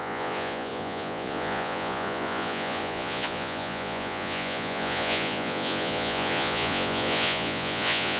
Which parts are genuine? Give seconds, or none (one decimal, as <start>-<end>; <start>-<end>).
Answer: none